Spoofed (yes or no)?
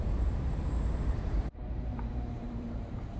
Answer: yes